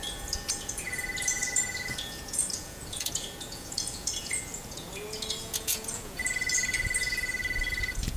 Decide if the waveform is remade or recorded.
remade